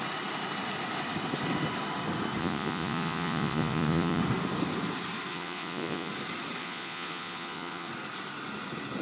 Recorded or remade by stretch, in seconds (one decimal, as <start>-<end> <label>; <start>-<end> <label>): 0.0-2.4 recorded; 2.4-4.2 remade; 4.2-5.3 recorded; 5.3-6.1 remade; 6.1-6.6 recorded; 6.6-7.9 remade; 7.9-9.0 recorded